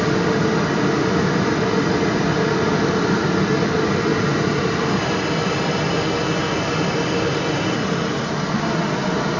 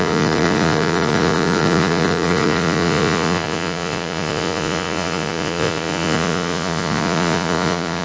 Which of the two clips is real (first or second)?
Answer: first